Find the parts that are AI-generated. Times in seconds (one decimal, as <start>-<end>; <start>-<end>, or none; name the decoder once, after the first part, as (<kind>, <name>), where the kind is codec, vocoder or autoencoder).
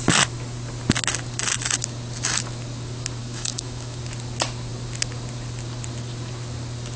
3.2-4.0 (autoencoder, DAC-VAE)